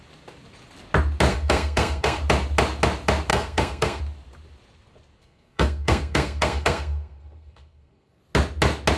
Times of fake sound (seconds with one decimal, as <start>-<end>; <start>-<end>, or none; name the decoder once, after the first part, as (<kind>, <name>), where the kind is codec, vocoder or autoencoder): 1.3-2.2 (codec, SNAC); 3.3-4.0; 5.2-8.2